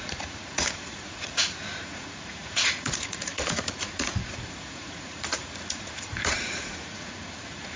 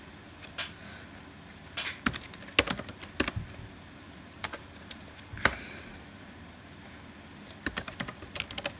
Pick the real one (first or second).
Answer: second